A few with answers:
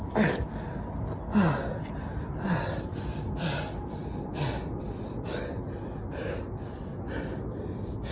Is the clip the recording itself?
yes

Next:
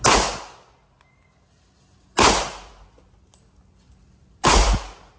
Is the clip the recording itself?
yes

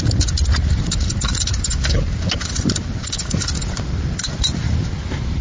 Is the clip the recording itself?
yes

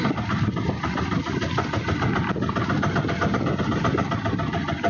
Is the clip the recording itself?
yes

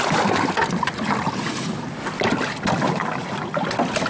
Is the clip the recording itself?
yes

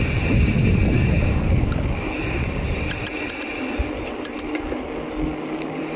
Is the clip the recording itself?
yes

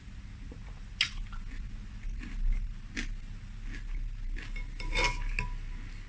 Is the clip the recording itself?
yes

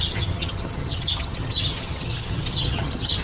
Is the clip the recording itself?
no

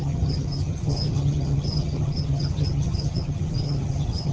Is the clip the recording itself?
no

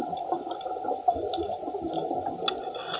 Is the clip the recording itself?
yes